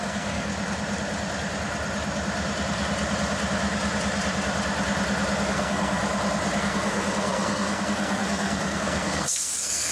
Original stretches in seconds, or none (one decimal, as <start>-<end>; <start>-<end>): 0.5-5.5; 6.0-6.6